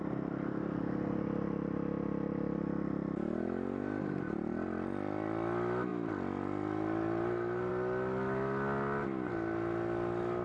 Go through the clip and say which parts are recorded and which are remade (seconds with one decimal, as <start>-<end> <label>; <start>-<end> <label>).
0.0-10.4 recorded